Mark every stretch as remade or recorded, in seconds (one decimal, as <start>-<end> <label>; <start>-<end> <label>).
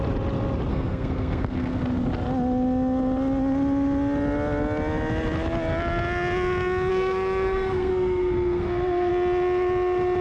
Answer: 0.0-0.7 recorded; 0.7-1.8 remade; 1.8-6.9 recorded; 6.9-9.1 remade; 9.1-10.2 recorded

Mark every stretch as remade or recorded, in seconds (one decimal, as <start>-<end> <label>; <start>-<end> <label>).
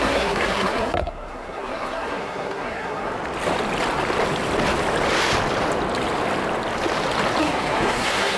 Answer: 0.0-3.1 remade; 3.1-7.4 recorded; 7.4-8.4 remade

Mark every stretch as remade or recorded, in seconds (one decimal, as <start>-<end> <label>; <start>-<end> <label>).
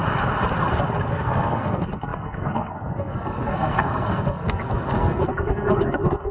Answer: 0.0-1.1 recorded; 1.1-6.3 remade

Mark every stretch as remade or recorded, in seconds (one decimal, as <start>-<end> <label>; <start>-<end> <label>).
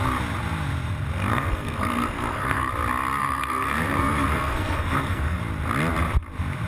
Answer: 0.0-1.3 recorded; 1.3-2.7 remade; 2.7-3.2 recorded; 3.2-5.4 remade; 5.4-6.7 recorded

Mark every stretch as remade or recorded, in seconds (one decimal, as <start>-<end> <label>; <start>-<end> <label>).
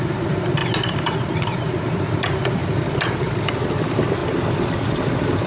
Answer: 0.0-2.6 remade; 2.6-3.4 recorded; 3.4-5.5 remade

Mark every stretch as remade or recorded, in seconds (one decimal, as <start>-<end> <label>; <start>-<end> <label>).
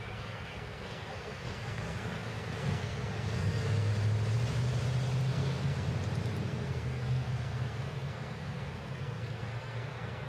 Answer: 0.0-3.9 remade; 3.9-5.3 recorded; 5.3-5.9 remade; 5.9-6.4 recorded; 6.4-10.3 remade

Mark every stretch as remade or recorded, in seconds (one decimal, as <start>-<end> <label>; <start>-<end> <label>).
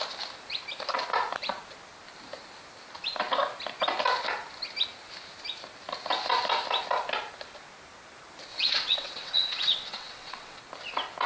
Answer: 0.0-8.5 recorded; 8.5-10.6 remade; 10.6-11.3 recorded